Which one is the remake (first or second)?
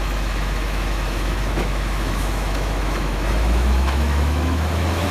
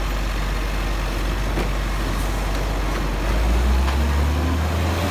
first